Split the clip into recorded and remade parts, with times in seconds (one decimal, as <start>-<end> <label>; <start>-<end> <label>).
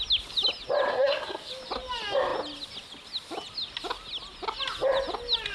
0.0-0.9 recorded; 0.9-1.5 remade; 1.5-5.5 recorded